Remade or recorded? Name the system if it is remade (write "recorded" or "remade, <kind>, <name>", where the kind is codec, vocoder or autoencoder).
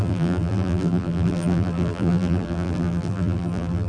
remade, vocoder, BigVGAN v2